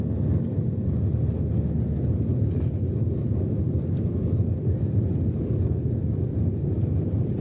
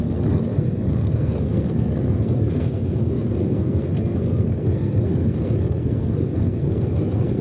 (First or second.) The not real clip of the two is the second